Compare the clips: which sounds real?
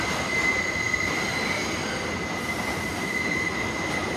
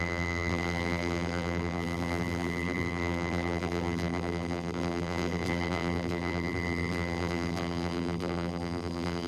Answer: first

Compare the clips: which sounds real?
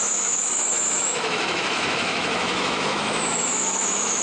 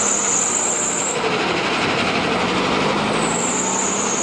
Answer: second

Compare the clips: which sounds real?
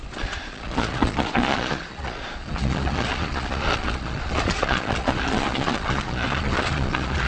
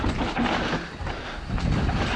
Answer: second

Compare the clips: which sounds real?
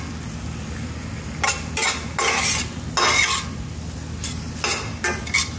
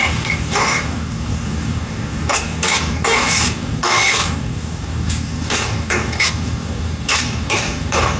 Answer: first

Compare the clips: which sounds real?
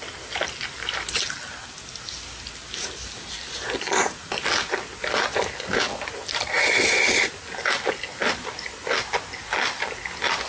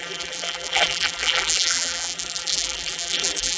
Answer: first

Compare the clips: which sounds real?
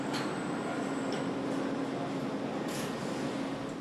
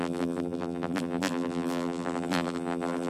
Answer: first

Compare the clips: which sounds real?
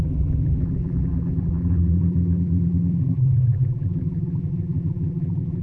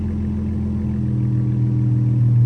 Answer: second